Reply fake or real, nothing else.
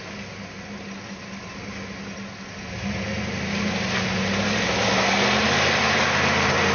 real